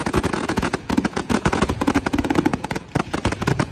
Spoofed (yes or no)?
yes